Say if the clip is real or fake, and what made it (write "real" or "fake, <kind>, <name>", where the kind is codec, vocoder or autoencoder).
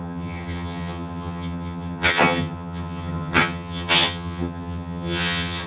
fake, vocoder, HiFi-GAN